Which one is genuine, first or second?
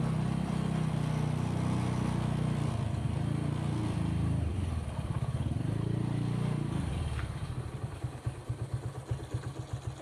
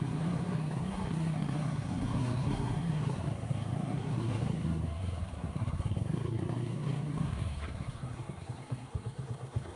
first